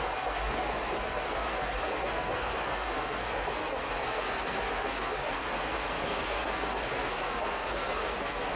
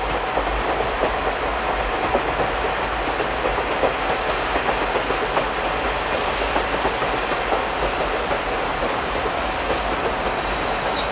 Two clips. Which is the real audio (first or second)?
second